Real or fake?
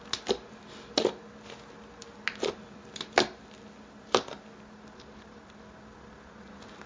real